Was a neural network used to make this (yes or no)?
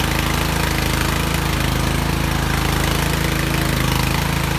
no